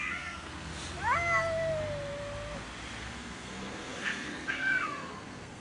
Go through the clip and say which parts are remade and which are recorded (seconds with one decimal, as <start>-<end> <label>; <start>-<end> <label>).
0.0-0.7 remade; 0.7-3.0 recorded; 3.0-5.6 remade